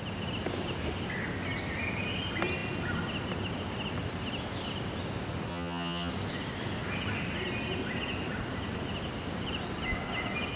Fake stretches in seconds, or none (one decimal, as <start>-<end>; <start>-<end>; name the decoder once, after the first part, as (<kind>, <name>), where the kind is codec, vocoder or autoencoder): 5.5-6.1 (vocoder, HiFi-GAN)